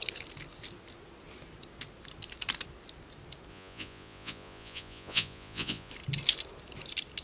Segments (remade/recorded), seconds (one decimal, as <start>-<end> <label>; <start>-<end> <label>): 0.0-3.5 recorded; 3.5-5.9 remade; 5.9-7.2 recorded